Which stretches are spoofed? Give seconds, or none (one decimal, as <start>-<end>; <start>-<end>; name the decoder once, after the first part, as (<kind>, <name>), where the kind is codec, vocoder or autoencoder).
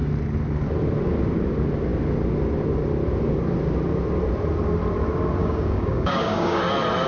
5.4-6.6 (codec, DAC)